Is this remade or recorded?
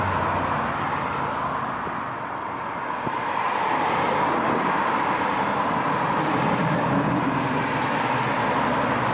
recorded